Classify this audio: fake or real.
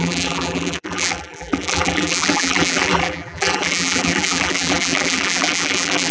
fake